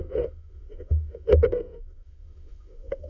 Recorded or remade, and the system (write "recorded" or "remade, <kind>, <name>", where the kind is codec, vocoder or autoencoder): remade, autoencoder, DAC-VAE